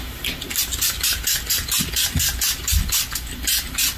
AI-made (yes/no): no